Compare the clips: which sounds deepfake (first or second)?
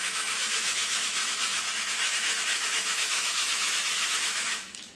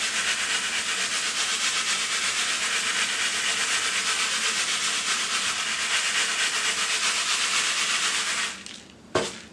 first